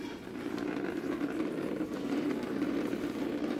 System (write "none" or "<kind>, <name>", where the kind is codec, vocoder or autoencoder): vocoder, BigVGAN v2